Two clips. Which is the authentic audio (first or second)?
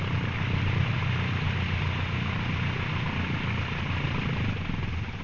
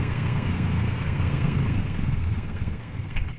first